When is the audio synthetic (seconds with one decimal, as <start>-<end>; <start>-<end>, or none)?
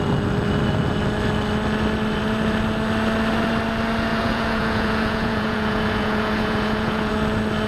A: 4.1-7.1